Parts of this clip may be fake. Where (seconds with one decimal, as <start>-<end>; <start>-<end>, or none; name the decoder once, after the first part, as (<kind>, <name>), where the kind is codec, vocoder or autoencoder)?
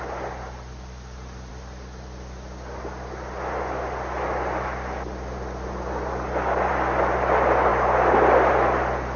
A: none